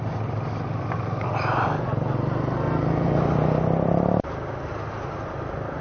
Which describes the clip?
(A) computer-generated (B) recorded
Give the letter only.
B